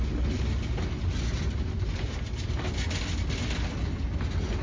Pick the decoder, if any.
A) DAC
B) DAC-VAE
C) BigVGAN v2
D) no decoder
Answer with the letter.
D